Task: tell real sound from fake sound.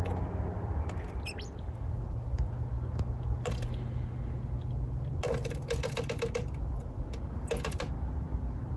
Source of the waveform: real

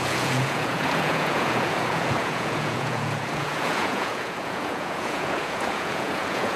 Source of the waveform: fake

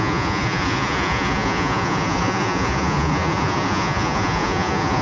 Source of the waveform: fake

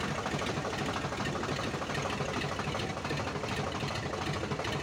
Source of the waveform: real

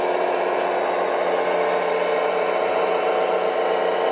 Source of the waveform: real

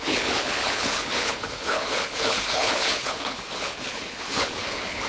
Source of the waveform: fake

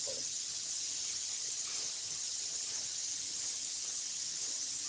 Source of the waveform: fake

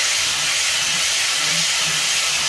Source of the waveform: real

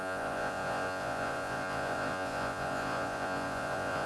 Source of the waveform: fake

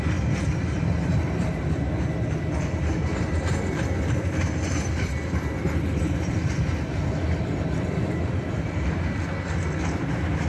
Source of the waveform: real